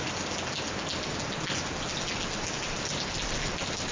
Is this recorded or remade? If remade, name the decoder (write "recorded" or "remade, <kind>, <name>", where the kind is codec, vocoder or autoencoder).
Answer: recorded